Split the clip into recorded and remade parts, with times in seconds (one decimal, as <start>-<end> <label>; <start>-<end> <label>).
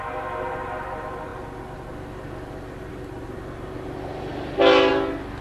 0.0-5.4 recorded